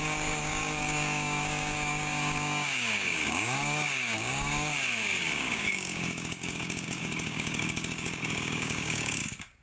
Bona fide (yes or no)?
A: no